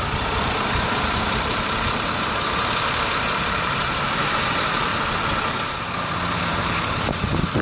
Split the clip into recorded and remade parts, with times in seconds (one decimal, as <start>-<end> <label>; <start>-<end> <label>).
0.0-4.9 remade; 4.9-6.4 recorded; 6.4-7.6 remade